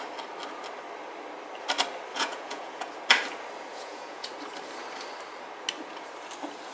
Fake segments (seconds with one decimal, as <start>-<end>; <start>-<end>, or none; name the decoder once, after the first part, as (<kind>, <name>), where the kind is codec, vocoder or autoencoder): 2.1-2.9 (vocoder, Vocos); 3.7-4.3